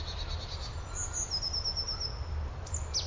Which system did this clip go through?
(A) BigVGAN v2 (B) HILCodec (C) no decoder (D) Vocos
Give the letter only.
C